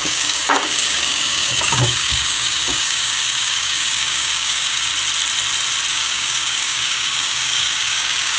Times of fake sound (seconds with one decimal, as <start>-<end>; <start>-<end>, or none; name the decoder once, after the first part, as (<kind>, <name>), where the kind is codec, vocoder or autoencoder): 0.0-4.9 (codec, DAC); 5.9-8.4